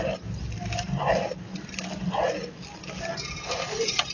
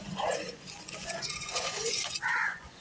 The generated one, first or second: second